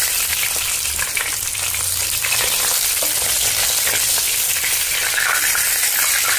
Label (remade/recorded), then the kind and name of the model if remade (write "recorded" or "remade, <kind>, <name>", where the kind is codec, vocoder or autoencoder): recorded